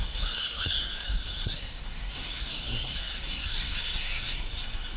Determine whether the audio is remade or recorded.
remade